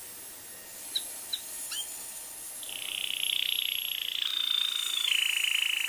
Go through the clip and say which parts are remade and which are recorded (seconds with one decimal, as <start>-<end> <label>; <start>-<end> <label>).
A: 0.0-5.9 recorded